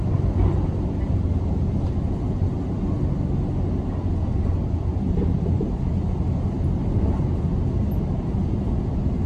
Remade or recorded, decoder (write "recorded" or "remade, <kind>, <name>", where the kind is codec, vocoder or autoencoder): recorded